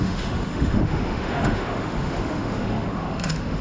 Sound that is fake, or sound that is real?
fake